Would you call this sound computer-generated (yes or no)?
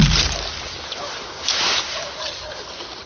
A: yes